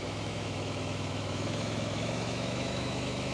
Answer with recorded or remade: remade